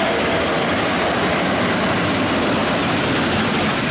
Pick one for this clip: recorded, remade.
recorded